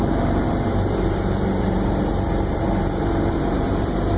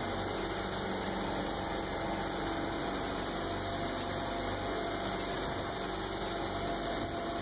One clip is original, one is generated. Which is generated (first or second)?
first